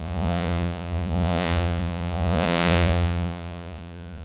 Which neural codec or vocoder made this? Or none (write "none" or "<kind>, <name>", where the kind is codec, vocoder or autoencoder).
vocoder, Vocos